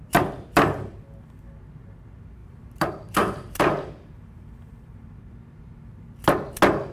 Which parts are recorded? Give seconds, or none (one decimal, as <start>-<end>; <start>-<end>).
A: 0.0-2.4; 5.2-6.9